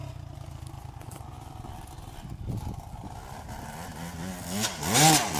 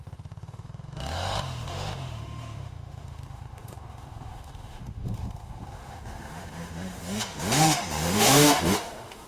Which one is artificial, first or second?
second